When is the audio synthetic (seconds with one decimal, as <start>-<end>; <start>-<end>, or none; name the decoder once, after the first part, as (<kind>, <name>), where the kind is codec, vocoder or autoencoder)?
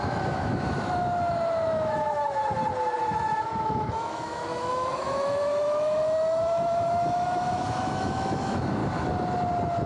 0.0-2.4 (autoencoder, DAC-VAE); 3.0-8.8